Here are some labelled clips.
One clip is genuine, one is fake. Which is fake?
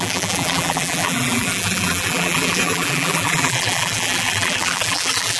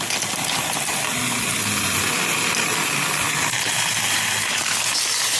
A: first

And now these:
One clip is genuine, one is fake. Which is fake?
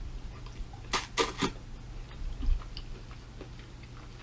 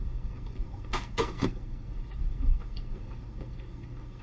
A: second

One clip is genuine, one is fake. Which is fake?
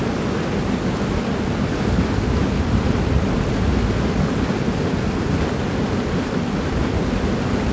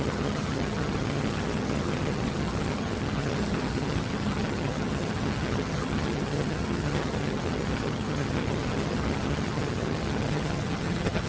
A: second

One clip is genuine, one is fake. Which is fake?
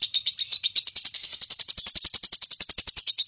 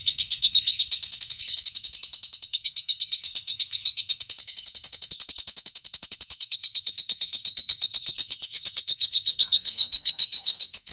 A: second